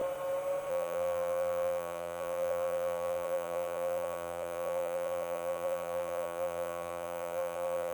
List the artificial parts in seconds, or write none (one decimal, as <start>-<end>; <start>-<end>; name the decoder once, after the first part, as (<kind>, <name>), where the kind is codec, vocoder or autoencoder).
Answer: 0.7-7.9 (vocoder, BigVGAN v2)